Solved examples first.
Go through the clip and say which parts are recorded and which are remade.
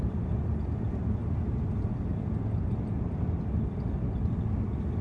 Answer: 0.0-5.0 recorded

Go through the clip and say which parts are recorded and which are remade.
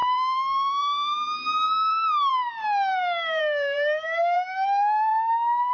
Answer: 0.0-5.1 remade; 5.1-5.7 recorded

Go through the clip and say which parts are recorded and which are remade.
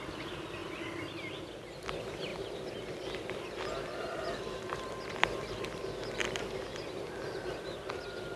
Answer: 0.0-8.4 recorded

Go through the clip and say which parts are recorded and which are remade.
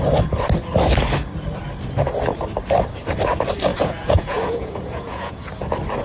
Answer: 0.0-3.7 recorded; 3.7-5.5 remade; 5.5-6.0 recorded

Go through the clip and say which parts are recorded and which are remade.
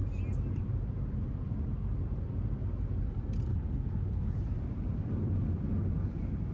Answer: 0.0-3.5 recorded; 3.5-4.3 remade; 4.3-6.5 recorded